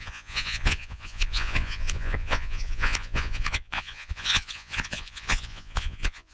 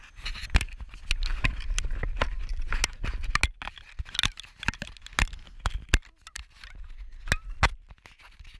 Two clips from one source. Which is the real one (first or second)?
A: second